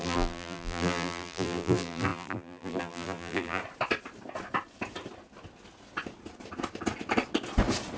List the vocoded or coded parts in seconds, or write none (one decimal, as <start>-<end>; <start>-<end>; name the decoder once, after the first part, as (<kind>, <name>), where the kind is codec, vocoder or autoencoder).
0.0-3.6 (vocoder, BigVGAN v2)